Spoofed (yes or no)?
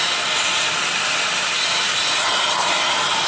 no